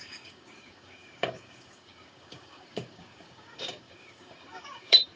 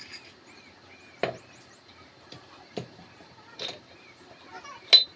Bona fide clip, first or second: second